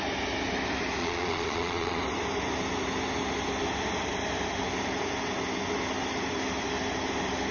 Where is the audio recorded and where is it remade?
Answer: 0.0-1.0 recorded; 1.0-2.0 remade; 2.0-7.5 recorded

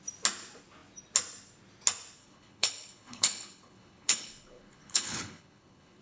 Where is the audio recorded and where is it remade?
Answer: 0.0-2.2 recorded; 2.2-6.0 remade